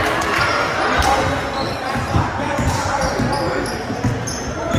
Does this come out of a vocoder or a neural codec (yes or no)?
no